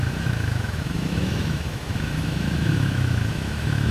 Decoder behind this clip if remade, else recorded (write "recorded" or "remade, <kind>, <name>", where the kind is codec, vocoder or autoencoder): remade, autoencoder, DAC-VAE